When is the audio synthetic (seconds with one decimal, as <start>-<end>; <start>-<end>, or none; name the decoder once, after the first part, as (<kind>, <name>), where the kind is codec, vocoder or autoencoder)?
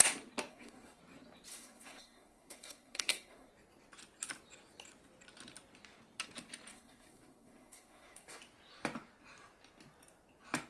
0.5-1.0 (codec, SNAC); 1.5-3.5; 6.7-8.4